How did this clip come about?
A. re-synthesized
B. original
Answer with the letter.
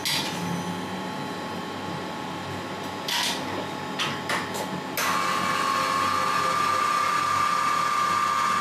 B